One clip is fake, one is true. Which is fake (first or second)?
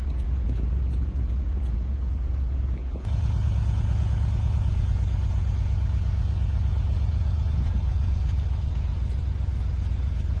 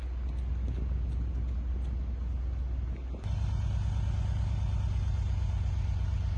first